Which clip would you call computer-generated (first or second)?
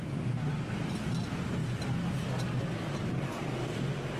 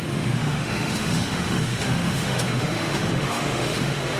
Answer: second